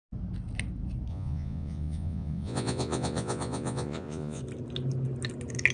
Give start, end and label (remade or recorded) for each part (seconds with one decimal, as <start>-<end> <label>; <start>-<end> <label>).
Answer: 0.0-1.1 recorded; 1.1-4.4 remade; 4.4-5.7 recorded